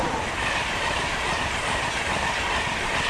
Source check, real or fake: fake